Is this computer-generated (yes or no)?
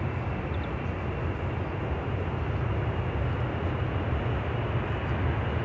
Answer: no